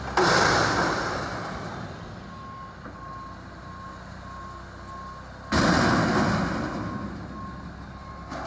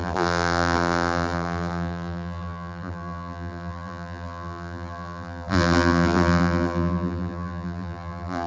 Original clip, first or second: first